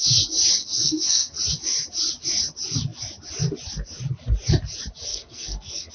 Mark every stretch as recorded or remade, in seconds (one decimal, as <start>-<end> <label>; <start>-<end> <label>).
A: 0.0-0.6 recorded; 0.6-1.4 remade; 1.4-5.1 recorded; 5.1-5.9 remade